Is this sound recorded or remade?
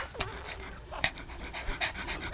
recorded